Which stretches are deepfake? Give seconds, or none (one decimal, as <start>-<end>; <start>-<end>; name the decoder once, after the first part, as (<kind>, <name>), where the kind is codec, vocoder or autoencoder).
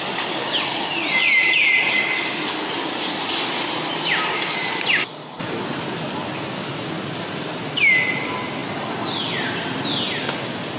none